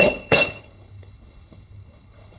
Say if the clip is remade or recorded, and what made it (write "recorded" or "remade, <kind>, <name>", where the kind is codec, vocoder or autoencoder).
remade, codec, HILCodec